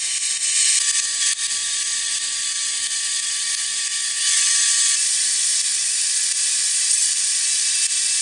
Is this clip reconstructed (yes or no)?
no